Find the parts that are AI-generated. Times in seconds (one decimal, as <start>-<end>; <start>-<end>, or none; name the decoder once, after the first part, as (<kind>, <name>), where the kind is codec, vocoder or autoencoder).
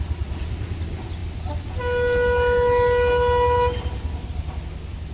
none